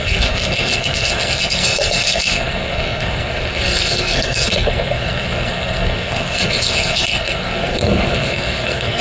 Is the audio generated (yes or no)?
yes